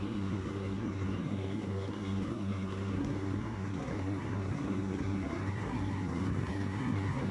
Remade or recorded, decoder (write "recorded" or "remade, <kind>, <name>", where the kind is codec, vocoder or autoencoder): remade, codec, SNAC